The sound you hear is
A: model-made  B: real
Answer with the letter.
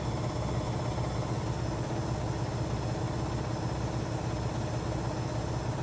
B